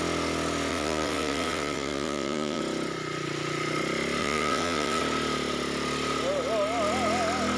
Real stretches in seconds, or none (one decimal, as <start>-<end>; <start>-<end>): 0.0-0.7; 2.6-4.2; 5.0-7.6